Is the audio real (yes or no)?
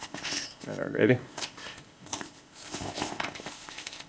no